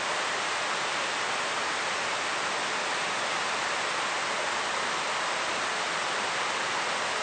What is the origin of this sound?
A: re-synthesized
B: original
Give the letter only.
B